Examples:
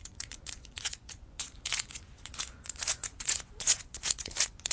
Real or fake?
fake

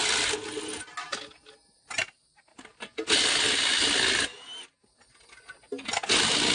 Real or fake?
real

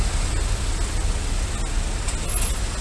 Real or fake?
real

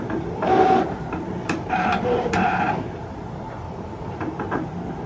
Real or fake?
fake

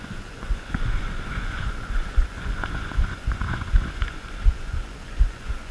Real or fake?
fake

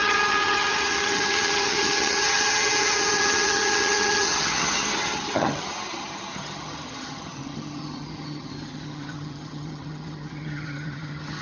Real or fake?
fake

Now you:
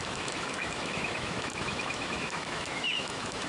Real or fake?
fake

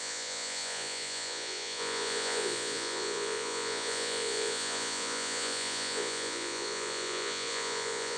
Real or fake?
fake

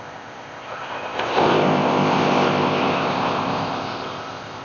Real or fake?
fake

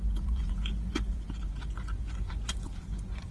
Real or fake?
fake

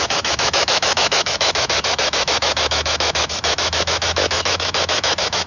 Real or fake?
fake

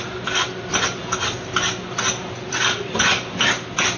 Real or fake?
real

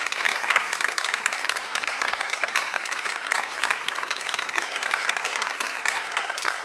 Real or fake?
fake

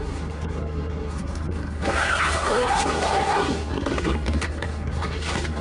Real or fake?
fake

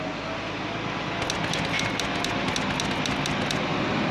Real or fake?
real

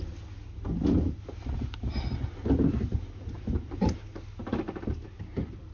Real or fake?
real